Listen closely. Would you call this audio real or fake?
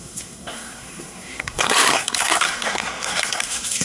fake